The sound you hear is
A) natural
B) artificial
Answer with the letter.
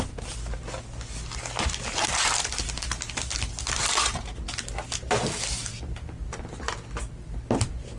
A